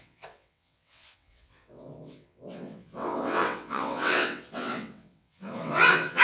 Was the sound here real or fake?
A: fake